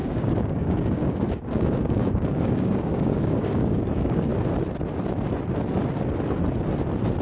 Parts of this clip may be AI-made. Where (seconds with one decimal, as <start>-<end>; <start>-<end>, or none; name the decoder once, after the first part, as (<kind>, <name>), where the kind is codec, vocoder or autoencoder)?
0.0-4.3 (codec, DAC)